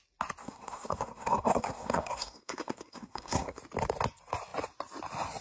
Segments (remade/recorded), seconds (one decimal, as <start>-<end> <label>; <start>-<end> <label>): 0.0-0.4 recorded; 0.4-3.6 remade; 3.6-5.4 recorded